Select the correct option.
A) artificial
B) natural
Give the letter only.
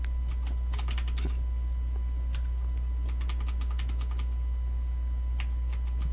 B